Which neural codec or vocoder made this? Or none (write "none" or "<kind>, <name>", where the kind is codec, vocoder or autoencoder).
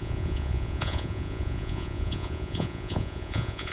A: vocoder, Vocos